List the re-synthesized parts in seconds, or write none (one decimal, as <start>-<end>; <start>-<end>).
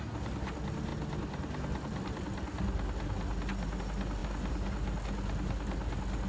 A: none